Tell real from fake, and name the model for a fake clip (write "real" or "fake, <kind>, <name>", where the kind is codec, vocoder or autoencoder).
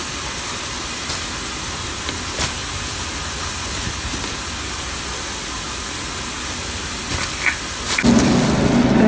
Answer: real